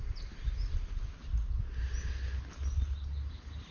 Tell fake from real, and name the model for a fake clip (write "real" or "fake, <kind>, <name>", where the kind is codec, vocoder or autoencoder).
real